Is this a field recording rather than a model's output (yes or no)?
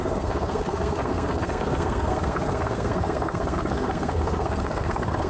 no